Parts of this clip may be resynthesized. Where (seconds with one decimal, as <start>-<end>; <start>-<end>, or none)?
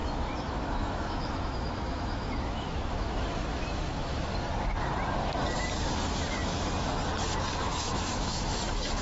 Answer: 0.0-4.2; 7.6-8.6